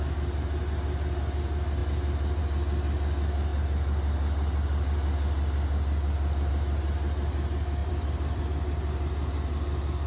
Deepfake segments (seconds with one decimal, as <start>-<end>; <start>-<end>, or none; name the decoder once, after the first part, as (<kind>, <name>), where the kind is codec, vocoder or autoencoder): 7.8-8.4 (vocoder, BigVGAN v2)